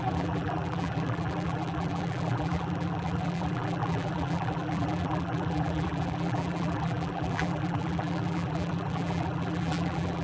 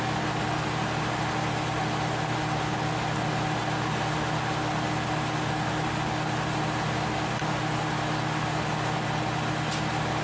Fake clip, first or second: first